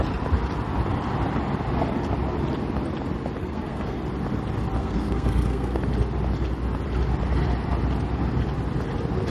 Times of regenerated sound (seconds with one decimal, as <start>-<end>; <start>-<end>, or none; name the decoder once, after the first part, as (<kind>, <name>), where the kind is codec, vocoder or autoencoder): 3.4-4.0 (codec, SNAC); 4.8-5.8